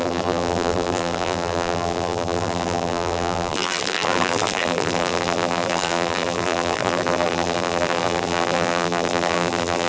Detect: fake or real fake